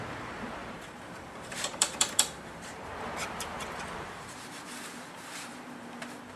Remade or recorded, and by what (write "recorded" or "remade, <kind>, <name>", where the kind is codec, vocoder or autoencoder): remade, vocoder, BigVGAN v2